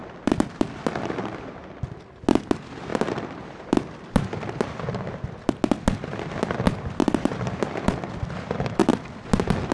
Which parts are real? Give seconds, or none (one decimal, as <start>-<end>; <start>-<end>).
2.0-2.9; 5.5-7.0; 8.1-8.8

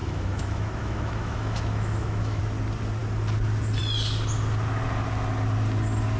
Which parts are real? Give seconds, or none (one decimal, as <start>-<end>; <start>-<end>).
2.4-6.2